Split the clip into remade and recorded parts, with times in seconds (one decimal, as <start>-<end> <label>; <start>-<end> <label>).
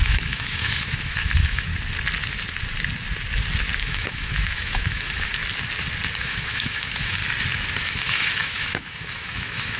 0.0-1.7 remade; 1.7-3.8 recorded; 3.8-5.4 remade; 5.4-6.2 recorded; 6.2-7.2 remade; 7.2-7.8 recorded; 7.8-9.8 remade